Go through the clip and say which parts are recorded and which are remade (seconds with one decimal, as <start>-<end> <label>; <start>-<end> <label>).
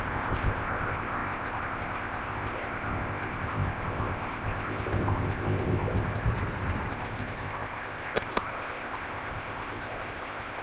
0.0-6.3 remade; 6.3-6.9 recorded; 6.9-10.6 remade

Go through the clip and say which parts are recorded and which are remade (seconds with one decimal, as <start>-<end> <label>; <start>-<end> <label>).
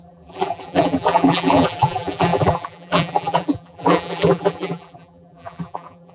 0.0-6.1 remade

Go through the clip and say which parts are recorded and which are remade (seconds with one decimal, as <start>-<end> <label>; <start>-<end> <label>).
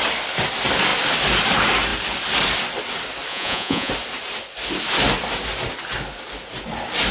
0.0-3.3 recorded; 3.3-3.9 remade; 3.9-7.1 recorded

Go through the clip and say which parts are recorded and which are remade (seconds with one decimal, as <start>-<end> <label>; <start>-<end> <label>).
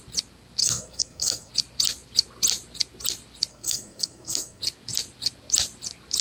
0.0-0.6 recorded; 0.6-1.5 remade; 1.5-3.5 recorded; 3.5-4.6 remade; 4.6-6.2 recorded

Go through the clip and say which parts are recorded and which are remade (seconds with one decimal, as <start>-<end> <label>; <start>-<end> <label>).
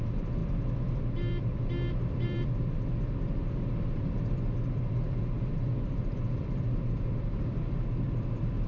0.0-8.7 remade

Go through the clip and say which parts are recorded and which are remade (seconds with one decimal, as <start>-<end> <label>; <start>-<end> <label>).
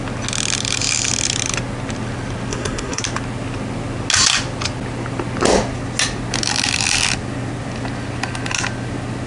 0.0-2.5 recorded; 2.5-3.0 remade; 3.0-9.3 recorded